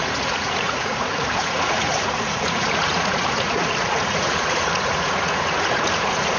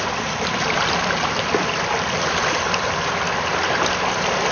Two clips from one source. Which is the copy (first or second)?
first